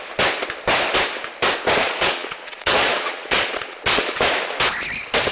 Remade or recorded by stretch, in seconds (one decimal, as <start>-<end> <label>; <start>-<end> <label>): 0.0-1.8 recorded; 1.8-4.3 remade; 4.3-5.3 recorded